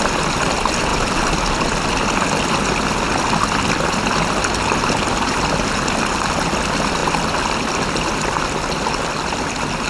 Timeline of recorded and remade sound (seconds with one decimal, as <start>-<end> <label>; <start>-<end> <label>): 0.0-9.9 recorded